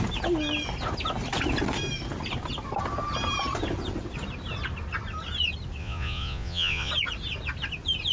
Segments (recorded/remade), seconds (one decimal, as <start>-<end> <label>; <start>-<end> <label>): 0.0-5.8 recorded; 5.8-6.9 remade; 6.9-8.1 recorded